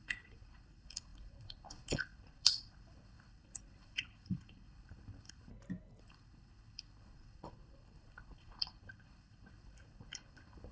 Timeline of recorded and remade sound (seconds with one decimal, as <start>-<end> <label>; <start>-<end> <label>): 0.0-5.5 remade; 5.5-6.0 recorded; 6.0-10.7 remade